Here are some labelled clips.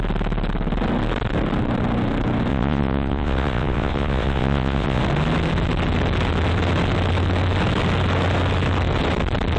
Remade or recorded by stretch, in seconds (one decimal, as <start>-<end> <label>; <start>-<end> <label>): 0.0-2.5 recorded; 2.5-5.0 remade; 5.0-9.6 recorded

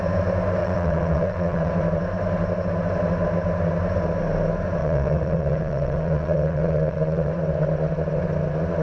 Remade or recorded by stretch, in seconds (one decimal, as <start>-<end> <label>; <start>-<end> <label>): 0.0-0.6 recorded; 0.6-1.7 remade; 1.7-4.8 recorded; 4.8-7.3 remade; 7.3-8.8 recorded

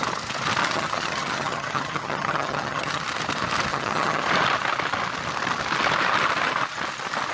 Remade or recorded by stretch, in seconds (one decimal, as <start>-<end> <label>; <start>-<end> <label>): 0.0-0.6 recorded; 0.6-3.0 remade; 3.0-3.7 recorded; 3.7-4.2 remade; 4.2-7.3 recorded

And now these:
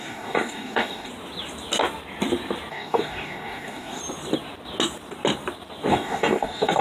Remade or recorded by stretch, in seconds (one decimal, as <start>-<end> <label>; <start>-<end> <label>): 0.0-1.1 remade; 1.1-2.7 recorded; 2.7-4.0 remade; 4.0-5.9 recorded; 5.9-6.8 remade

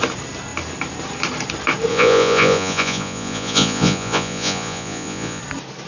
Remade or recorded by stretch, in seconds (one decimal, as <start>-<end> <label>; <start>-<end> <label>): 0.0-1.9 recorded; 1.9-5.4 remade; 5.4-5.9 recorded

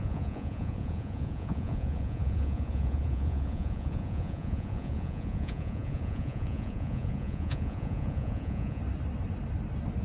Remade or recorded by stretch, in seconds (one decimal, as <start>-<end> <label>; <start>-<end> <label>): 0.0-8.8 remade; 8.8-10.0 recorded

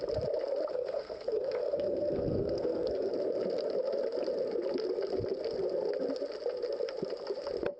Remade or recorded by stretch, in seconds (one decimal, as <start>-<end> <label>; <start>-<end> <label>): 0.0-0.7 recorded; 0.7-3.1 remade; 3.1-7.8 recorded